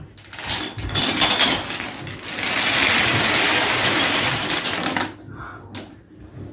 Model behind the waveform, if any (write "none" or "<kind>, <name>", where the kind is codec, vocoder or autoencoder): none